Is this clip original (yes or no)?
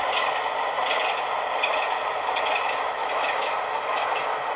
yes